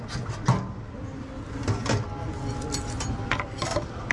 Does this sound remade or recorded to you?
recorded